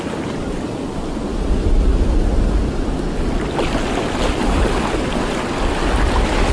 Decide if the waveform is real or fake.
real